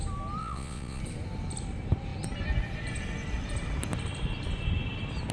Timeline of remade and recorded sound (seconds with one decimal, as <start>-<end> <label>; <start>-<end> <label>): 0.0-0.4 recorded; 0.4-1.0 remade; 1.0-5.3 recorded